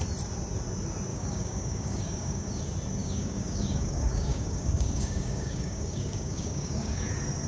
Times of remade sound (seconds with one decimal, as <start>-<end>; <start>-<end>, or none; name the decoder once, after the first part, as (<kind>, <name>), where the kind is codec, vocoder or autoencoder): 1.1-2.6 (codec, DAC); 3.0-7.1